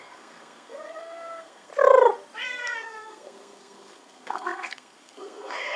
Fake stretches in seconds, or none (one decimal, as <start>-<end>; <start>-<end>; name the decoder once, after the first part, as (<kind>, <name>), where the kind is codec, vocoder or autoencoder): 0.0-1.7 (codec, SNAC); 2.6-5.8